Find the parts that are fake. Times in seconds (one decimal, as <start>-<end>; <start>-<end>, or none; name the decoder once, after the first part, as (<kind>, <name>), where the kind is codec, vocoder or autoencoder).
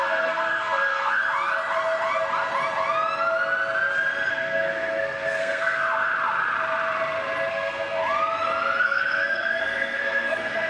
0.0-1.2 (codec, SNAC); 4.3-6.1; 7.5-8.0; 8.8-10.7